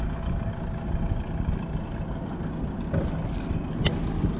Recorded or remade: recorded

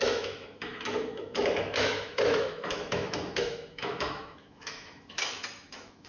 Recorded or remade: remade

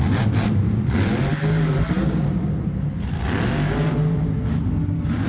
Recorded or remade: recorded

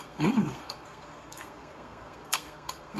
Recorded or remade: remade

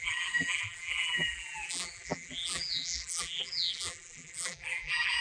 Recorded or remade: remade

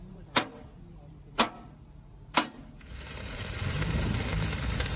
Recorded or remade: remade